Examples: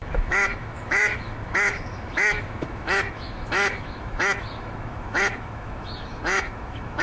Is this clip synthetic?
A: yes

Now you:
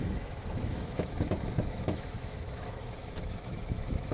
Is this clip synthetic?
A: yes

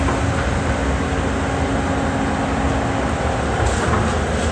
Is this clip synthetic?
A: no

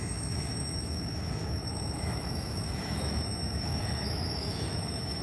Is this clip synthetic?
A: yes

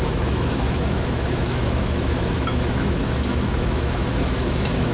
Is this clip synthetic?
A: yes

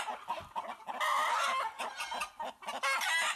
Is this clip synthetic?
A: no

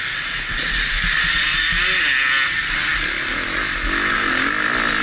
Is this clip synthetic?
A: no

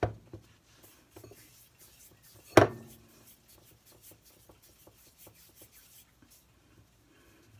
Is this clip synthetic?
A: no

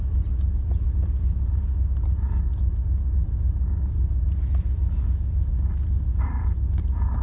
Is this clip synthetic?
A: no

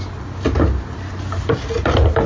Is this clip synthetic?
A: no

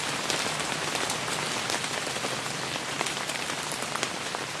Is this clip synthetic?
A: no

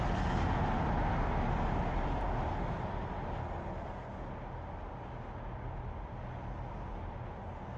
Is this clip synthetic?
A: no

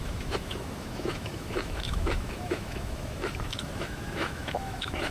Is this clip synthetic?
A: yes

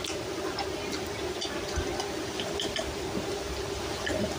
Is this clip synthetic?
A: no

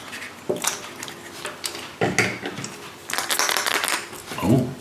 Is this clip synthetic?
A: no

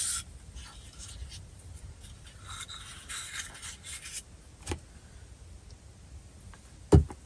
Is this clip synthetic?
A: no